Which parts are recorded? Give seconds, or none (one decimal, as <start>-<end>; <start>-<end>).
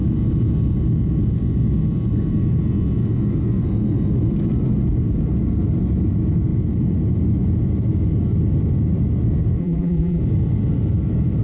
0.0-9.6; 10.2-11.4